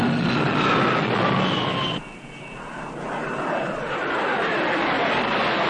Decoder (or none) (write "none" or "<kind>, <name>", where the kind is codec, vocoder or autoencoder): none